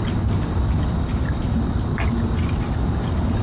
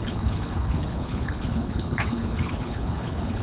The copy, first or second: second